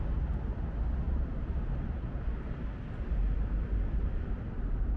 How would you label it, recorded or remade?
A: recorded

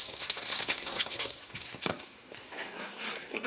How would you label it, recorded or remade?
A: remade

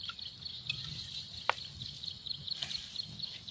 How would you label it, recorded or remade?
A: recorded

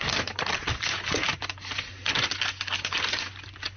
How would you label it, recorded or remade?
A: recorded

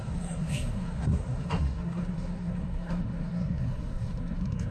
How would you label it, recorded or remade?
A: remade